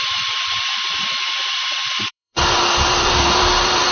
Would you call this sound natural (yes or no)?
no